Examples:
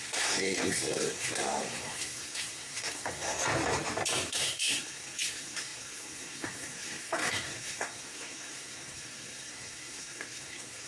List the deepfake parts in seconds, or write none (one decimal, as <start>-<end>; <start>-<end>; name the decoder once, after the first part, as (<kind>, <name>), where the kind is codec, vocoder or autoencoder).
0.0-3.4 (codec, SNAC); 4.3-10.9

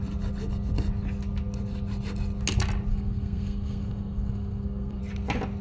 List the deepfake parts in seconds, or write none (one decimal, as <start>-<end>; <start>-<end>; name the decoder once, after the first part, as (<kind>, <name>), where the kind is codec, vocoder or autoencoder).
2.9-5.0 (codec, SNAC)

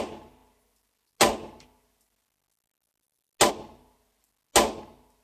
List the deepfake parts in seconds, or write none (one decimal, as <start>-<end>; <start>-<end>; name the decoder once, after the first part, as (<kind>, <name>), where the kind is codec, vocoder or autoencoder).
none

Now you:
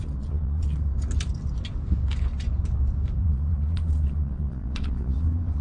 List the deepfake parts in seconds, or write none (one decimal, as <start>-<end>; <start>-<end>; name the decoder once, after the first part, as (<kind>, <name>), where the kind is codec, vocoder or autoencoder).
0.0-0.9 (vocoder, Vocos); 3.2-5.6

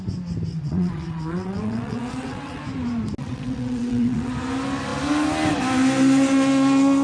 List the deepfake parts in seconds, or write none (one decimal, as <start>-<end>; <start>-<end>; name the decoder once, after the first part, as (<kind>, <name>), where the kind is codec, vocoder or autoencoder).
0.5-2.6 (vocoder, WaveNeXt); 3.2-4.3

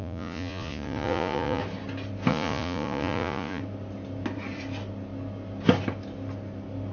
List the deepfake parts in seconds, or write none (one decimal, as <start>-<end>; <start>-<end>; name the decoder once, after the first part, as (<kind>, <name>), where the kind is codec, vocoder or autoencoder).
0.0-1.6 (vocoder, Vocos); 2.3-3.6

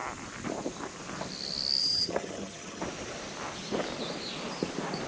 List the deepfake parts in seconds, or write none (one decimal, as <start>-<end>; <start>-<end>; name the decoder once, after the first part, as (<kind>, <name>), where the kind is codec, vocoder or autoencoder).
1.8-2.8 (vocoder, HiFi-GAN)

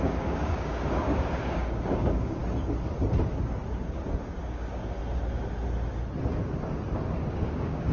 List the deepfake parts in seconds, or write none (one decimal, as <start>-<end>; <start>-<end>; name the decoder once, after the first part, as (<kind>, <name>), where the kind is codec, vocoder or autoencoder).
0.0-2.4 (codec, DAC); 4.4-5.0; 7.3-7.9